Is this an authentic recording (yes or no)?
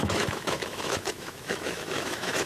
no